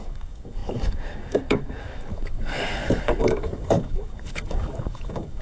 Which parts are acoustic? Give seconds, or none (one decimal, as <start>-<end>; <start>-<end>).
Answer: none